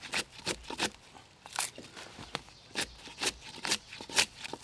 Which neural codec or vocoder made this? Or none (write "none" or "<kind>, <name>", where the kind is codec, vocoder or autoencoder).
none